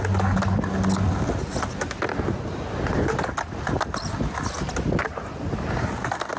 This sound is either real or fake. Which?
real